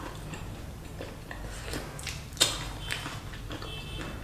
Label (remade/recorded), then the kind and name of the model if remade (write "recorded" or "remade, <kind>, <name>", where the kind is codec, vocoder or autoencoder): recorded